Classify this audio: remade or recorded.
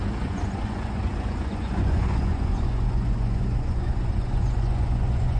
remade